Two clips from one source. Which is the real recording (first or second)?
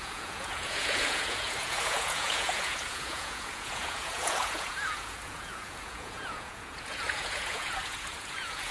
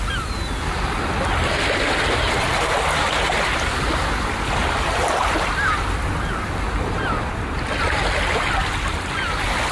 second